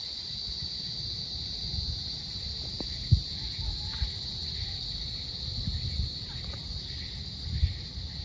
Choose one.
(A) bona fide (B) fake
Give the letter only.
B